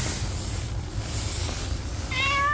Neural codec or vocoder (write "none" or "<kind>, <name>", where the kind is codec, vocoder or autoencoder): none